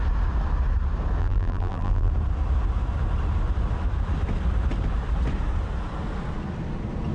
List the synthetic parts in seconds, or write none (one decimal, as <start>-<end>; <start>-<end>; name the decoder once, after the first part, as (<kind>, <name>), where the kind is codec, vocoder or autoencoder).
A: 1.2-2.1 (vocoder, BigVGAN v2)